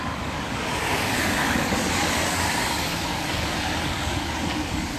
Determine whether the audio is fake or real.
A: fake